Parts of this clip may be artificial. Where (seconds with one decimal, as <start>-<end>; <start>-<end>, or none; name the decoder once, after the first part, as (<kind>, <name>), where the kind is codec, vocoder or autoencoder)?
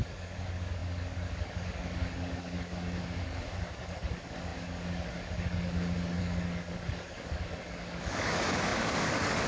0.0-9.5 (codec, DAC)